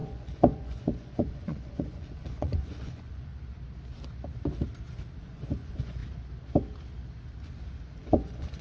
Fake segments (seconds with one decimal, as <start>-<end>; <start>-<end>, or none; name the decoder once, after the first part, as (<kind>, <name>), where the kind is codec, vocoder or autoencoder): 0.0-3.3 (vocoder, Vocos); 5.2-6.0; 8.0-8.6